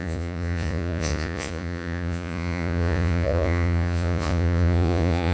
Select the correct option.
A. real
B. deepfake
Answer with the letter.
B